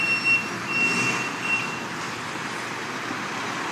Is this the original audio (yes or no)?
yes